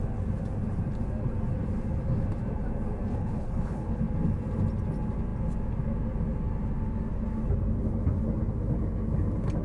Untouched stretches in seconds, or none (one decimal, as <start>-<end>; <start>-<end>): 0.0-3.1; 4.0-9.6

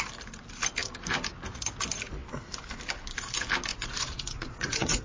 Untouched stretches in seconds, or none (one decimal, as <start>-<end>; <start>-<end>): 0.0-3.7

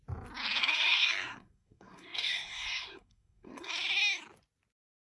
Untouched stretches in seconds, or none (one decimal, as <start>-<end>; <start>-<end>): 0.0-0.6; 3.7-5.1

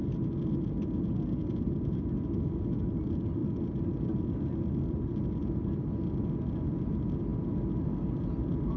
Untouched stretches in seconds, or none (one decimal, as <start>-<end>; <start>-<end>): 0.0-8.8